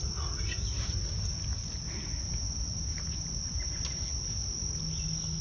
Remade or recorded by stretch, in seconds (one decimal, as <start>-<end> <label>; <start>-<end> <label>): 0.0-5.4 recorded

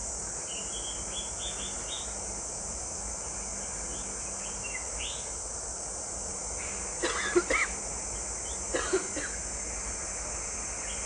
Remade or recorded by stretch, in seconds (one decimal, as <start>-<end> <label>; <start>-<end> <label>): 0.0-11.1 recorded

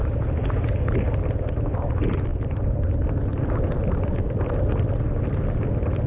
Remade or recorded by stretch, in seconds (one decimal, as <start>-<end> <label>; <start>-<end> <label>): 0.0-2.3 recorded; 2.3-3.4 remade; 3.4-3.8 recorded; 3.8-4.8 remade; 4.8-6.1 recorded